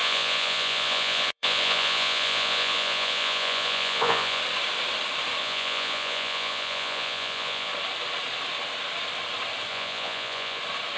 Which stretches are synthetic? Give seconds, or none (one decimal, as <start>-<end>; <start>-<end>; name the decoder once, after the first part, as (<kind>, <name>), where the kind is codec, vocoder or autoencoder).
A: 0.0-4.4 (vocoder, Vocos); 5.4-7.7; 9.7-10.6